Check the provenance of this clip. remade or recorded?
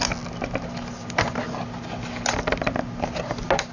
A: recorded